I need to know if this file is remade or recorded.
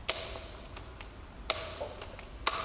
recorded